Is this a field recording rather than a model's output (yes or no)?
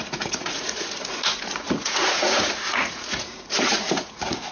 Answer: no